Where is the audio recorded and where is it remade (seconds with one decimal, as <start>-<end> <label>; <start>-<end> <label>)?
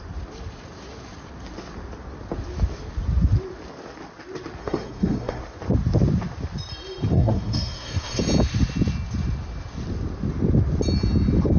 0.0-4.6 recorded; 4.6-5.4 remade; 5.4-7.1 recorded; 7.1-8.2 remade; 8.2-11.6 recorded